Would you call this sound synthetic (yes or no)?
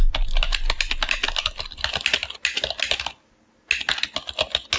no